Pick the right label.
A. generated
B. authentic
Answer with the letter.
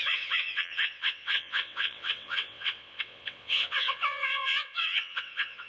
A